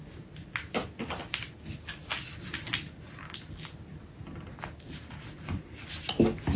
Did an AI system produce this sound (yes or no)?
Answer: no